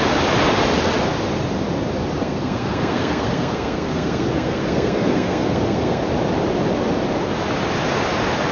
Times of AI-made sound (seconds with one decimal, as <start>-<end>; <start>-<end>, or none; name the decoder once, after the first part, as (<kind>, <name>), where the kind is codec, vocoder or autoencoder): 2.2-6.0 (codec, SNAC)